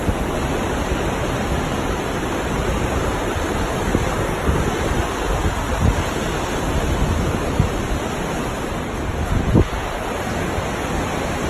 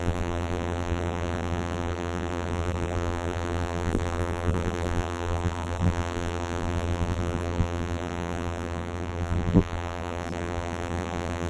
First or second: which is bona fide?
first